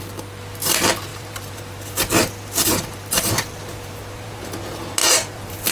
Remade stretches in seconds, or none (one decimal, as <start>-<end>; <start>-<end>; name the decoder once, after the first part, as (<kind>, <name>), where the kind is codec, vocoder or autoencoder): 1.1-4.5 (vocoder, BigVGAN v2); 5.0-5.7